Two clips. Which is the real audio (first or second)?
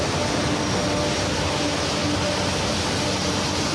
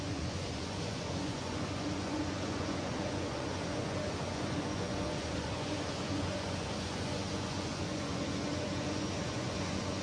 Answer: first